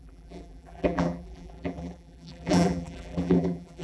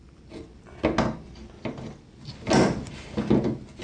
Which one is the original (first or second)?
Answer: second